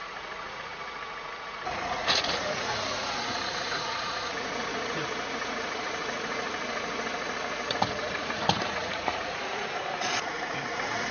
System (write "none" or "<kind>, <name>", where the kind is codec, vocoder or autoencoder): vocoder, Vocos